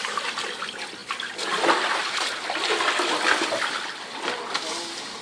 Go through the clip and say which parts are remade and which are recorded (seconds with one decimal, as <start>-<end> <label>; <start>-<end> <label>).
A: 0.0-5.2 recorded

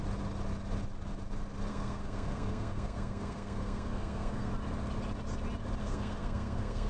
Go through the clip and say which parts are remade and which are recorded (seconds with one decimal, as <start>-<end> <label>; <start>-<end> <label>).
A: 0.0-1.7 recorded; 1.7-4.5 remade; 4.5-5.8 recorded; 5.8-6.9 remade

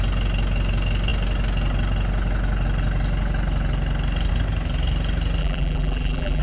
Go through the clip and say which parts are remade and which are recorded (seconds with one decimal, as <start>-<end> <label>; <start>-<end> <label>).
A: 0.0-5.4 recorded; 5.4-6.4 remade

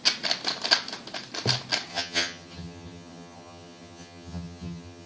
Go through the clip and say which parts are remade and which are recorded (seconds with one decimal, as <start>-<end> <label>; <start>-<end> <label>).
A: 0.0-1.9 recorded; 1.9-5.1 remade

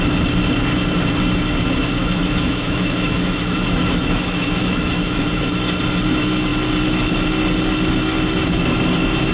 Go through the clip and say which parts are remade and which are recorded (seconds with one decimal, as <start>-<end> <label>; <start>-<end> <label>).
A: 0.0-2.0 recorded; 2.0-5.3 remade; 5.3-9.3 recorded

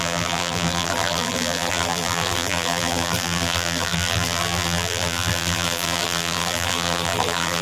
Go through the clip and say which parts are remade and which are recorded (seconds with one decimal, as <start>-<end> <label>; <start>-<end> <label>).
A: 0.0-7.6 remade

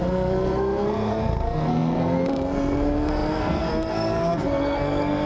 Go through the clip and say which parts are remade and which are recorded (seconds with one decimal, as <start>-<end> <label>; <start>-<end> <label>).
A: 0.0-5.3 remade

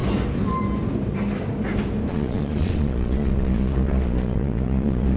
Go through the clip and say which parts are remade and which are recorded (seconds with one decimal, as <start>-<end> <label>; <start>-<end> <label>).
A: 0.0-2.1 recorded; 2.1-5.2 remade